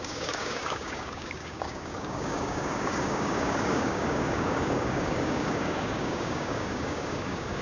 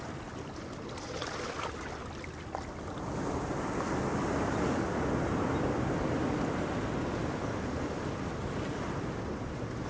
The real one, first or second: second